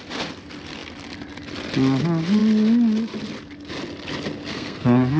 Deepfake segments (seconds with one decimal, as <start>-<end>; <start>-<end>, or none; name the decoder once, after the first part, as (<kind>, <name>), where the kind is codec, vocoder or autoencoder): 4.5-5.2 (codec, SNAC)